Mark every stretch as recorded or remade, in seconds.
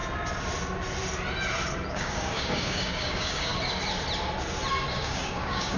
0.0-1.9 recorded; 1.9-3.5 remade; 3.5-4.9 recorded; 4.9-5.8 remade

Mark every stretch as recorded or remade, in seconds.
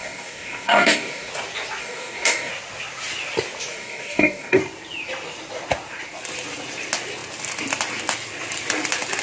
0.0-1.3 remade; 1.3-1.8 recorded; 1.8-2.5 remade; 2.5-3.7 recorded; 3.7-4.6 remade; 4.6-9.2 recorded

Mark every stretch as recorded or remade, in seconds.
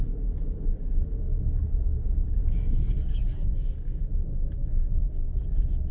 0.0-4.6 remade; 4.6-5.9 recorded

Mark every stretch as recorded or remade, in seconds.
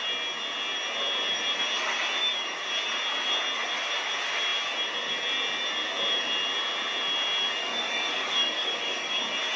0.0-2.2 recorded; 2.2-2.7 remade; 2.7-7.6 recorded; 7.6-9.2 remade; 9.2-9.6 recorded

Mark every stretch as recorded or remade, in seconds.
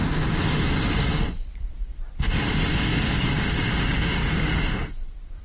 0.0-2.9 recorded; 2.9-3.7 remade; 3.7-4.2 recorded; 4.2-4.7 remade; 4.7-5.4 recorded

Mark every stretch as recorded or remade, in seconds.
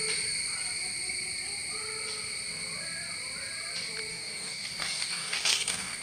0.0-4.1 recorded; 4.1-6.0 remade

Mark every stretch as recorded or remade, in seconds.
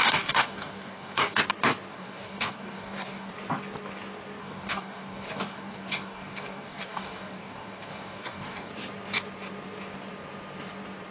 0.0-1.4 remade; 1.4-1.9 recorded; 1.9-3.3 remade; 3.3-4.4 recorded; 4.4-8.7 remade; 8.7-11.1 recorded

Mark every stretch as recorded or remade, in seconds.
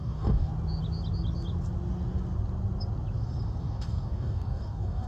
0.0-0.5 remade; 0.5-3.6 recorded; 3.6-5.1 remade